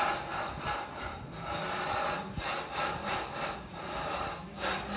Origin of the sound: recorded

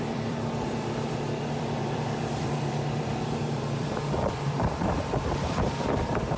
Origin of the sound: remade